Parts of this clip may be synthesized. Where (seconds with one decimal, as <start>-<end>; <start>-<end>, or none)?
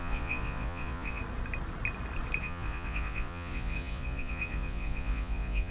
0.0-1.2; 2.4-5.7